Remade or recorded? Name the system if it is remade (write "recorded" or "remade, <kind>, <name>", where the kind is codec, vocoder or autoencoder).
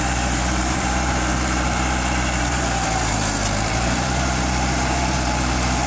remade, vocoder, BigVGAN v2